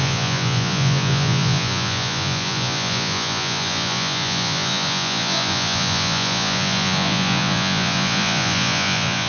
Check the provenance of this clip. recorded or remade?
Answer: remade